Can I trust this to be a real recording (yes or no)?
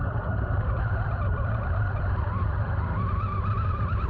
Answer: no